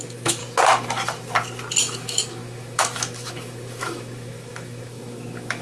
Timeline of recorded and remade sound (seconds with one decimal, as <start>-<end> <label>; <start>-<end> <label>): 0.0-0.4 remade; 0.4-1.8 recorded; 1.8-5.6 remade